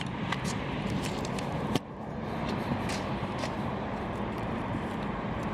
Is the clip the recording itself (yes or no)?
no